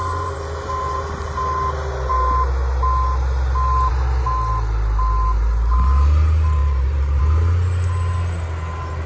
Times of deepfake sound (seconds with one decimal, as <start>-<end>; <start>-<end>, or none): 0.0-1.0; 6.6-7.2